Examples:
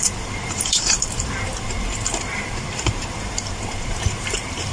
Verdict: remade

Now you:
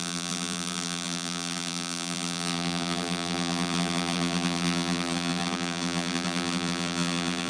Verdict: remade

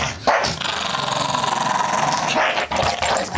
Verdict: recorded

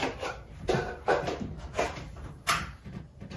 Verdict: remade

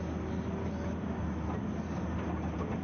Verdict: recorded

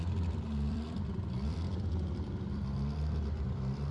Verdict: remade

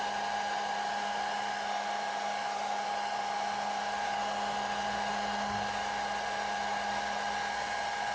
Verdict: recorded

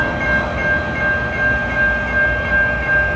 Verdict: recorded